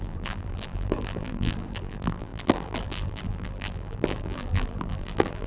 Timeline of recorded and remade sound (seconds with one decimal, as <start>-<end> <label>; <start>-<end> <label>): 0.0-5.5 remade